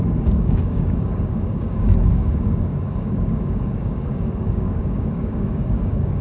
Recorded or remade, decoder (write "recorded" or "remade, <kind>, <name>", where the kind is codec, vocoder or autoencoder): remade, codec, DAC